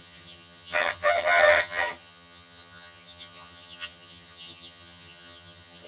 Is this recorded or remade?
remade